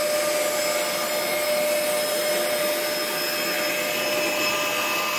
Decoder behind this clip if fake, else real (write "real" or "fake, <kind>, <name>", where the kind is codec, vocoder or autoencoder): real